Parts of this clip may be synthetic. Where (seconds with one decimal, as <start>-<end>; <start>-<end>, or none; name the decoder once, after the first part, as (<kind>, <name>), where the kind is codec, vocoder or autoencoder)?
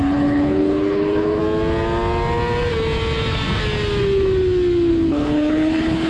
0.0-1.4 (codec, HILCodec); 4.9-6.1